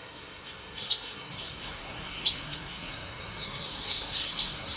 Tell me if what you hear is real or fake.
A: fake